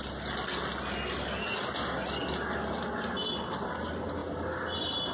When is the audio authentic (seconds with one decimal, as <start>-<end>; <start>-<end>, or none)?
0.0-4.2